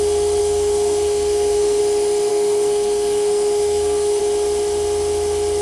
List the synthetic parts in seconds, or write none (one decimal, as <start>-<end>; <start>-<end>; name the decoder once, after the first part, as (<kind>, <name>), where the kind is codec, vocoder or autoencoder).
0.4-1.8 (codec, SNAC); 2.3-4.2